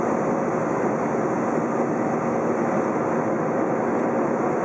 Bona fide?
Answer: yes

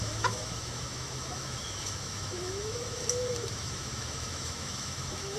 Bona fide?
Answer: no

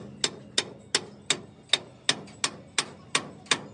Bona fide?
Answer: yes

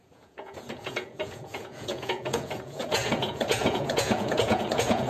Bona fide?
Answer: no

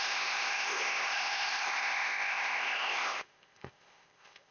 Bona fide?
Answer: no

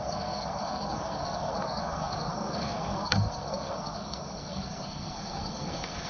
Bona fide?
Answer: no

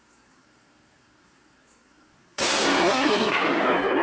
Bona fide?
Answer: no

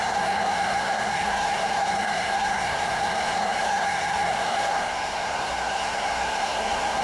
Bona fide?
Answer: no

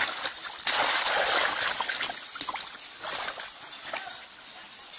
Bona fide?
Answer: yes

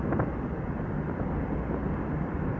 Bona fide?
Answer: yes